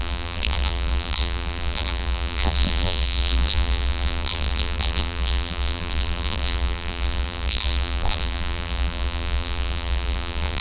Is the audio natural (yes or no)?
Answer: no